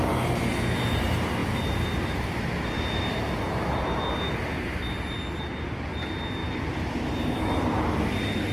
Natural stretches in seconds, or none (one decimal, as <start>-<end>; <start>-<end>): 0.0-1.4; 3.0-6.4; 7.9-8.5